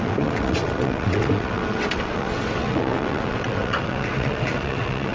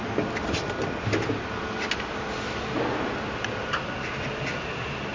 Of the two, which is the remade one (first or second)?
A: first